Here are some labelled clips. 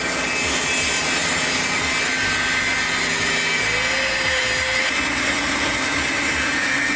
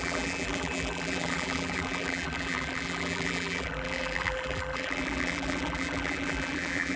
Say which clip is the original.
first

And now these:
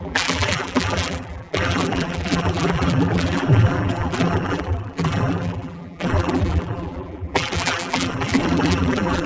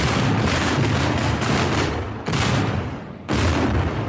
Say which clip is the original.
second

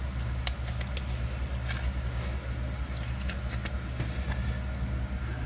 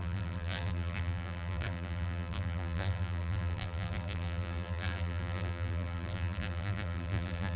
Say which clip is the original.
first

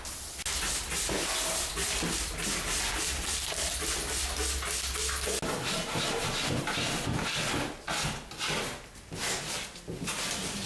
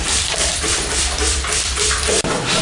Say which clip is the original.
first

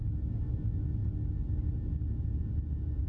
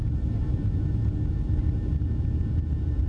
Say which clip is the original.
first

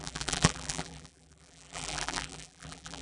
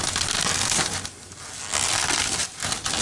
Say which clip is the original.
second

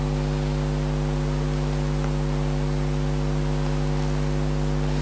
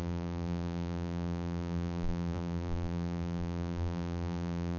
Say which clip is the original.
first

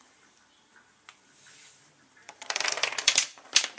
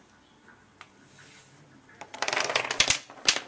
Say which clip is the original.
second